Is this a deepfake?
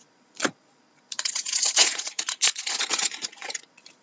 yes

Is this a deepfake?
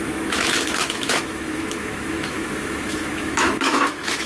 yes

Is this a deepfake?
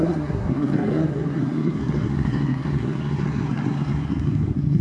yes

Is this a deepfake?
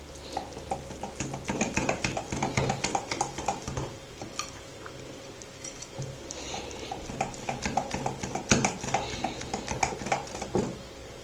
no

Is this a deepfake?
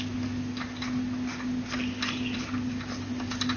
no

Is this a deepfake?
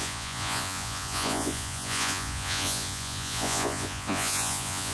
yes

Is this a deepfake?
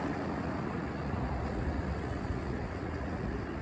yes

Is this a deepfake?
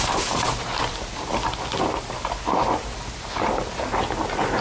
no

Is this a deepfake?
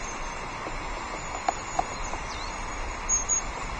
no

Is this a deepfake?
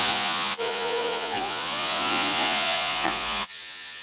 yes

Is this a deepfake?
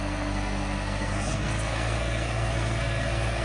yes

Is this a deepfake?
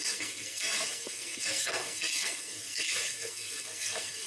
yes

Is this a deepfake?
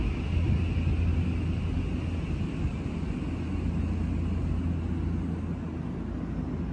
no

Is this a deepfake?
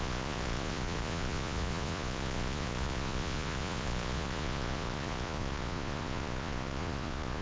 yes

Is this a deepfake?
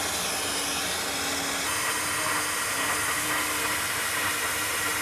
no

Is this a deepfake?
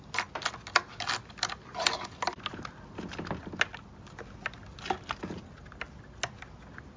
no